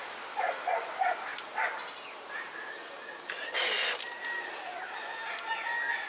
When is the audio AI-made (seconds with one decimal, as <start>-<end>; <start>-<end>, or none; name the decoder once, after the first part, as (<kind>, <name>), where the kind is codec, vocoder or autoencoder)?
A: none